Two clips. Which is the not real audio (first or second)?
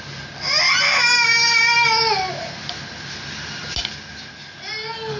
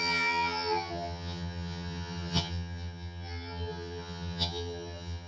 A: second